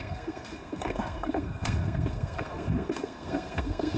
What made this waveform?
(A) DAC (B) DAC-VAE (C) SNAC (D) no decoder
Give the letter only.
C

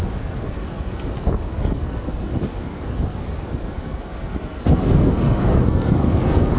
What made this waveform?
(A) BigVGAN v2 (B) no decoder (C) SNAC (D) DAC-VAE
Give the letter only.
C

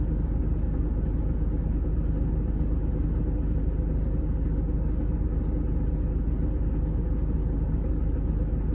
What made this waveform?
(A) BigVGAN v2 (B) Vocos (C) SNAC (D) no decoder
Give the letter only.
D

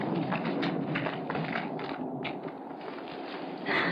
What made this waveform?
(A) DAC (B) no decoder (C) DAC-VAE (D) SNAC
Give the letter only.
B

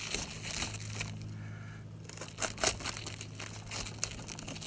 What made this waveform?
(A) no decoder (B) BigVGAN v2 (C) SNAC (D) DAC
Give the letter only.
A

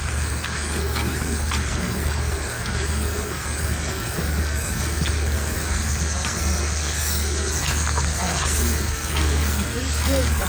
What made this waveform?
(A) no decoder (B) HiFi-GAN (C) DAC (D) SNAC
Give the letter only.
D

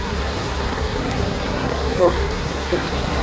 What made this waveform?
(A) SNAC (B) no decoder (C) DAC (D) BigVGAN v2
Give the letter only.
A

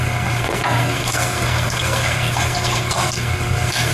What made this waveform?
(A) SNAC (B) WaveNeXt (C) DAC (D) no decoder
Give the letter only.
A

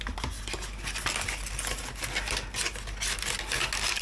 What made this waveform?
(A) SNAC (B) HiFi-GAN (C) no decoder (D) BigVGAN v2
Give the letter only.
C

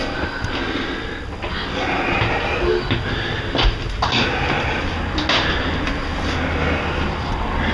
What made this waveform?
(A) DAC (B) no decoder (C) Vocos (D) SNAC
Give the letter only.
B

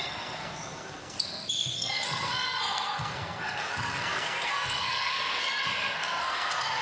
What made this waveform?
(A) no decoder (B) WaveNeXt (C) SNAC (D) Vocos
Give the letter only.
C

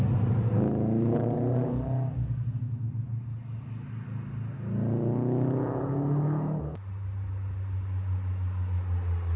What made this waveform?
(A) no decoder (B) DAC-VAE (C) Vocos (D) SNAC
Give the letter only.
A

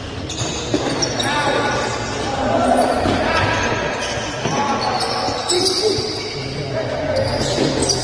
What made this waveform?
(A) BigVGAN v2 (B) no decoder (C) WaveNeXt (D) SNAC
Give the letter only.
B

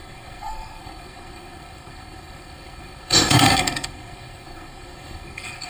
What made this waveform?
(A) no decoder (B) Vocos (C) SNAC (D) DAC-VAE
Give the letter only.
C